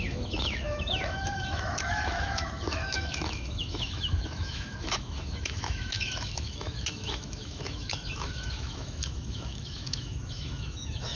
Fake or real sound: fake